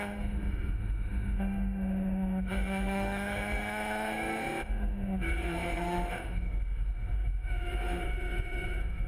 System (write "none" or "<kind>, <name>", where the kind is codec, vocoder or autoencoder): autoencoder, DAC-VAE